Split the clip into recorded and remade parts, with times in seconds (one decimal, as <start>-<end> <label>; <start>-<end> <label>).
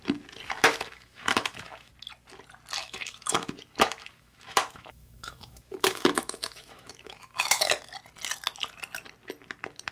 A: 0.0-0.6 recorded; 0.6-1.9 remade; 1.9-2.8 recorded; 2.8-7.7 remade; 7.7-9.9 recorded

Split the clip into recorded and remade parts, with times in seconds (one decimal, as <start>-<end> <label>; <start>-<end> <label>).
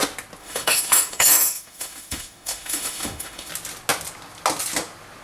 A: 0.0-0.4 recorded; 0.4-3.5 remade; 3.5-5.2 recorded